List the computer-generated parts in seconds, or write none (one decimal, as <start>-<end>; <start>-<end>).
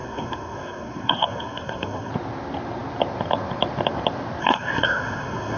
0.0-2.1; 4.4-5.6